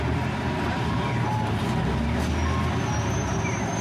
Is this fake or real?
real